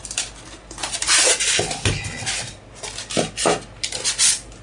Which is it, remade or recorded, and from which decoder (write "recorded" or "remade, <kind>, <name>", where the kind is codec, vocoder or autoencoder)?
recorded